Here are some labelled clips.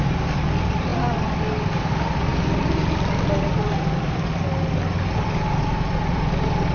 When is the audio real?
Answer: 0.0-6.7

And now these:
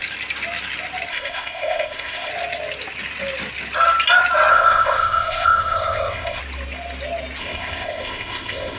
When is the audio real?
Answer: 0.0-1.1; 2.3-4.5; 6.4-7.4

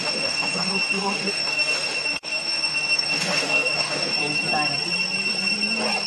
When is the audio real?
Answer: 4.1-6.1

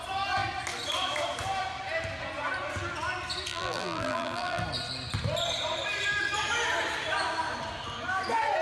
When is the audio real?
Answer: 0.0-3.5; 4.6-8.6

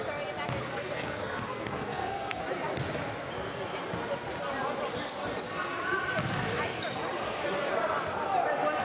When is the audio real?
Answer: 0.0-0.7; 2.4-8.8